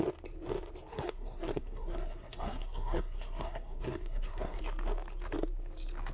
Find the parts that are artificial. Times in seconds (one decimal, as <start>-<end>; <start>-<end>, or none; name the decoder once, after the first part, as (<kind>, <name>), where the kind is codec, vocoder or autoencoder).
0.9-4.6 (codec, SNAC)